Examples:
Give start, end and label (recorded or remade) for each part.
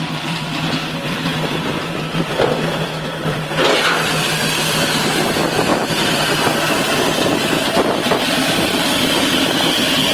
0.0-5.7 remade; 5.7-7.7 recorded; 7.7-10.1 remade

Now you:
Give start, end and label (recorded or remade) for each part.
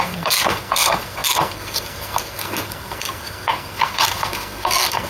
0.0-5.1 remade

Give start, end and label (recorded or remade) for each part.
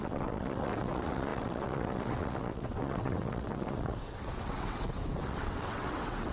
0.0-6.3 remade